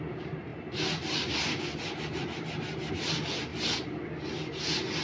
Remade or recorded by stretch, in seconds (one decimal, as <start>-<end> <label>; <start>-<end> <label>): 0.0-5.0 recorded